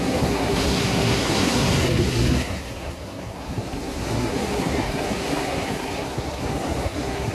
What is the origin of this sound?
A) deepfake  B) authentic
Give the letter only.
A